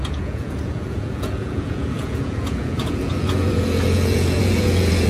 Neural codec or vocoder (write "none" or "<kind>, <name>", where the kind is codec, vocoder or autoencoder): vocoder, Vocos